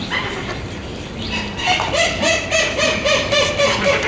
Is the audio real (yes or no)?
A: yes